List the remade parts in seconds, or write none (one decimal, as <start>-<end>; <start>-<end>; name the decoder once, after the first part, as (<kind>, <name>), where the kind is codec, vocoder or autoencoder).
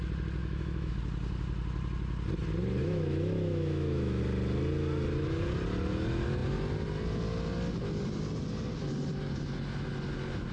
0.4-1.0 (autoencoder, DAC-VAE); 2.8-4.2